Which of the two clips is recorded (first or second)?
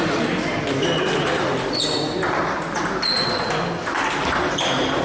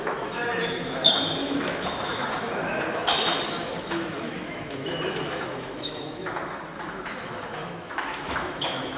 first